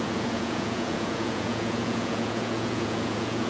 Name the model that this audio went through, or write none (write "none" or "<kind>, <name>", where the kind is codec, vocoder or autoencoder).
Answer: vocoder, Vocos